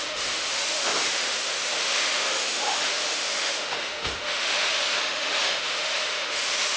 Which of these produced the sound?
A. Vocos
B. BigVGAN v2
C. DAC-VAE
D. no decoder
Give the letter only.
C